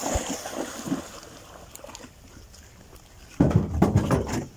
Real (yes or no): yes